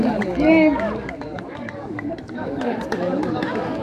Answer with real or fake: fake